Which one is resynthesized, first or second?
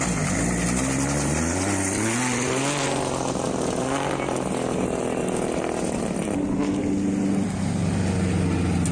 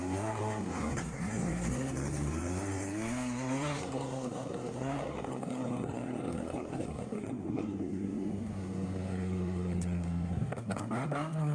second